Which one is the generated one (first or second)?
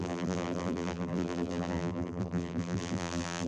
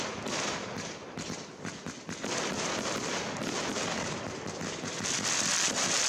first